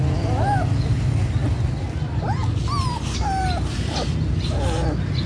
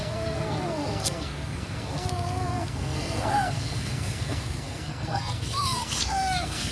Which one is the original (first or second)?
first